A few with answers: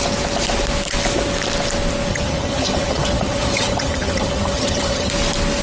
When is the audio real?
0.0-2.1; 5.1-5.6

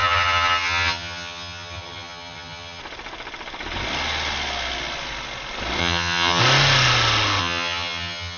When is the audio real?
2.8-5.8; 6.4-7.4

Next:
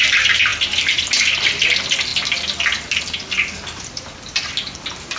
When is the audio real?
0.0-5.2